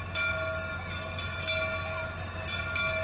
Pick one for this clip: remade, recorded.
recorded